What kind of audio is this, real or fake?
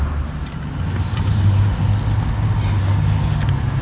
real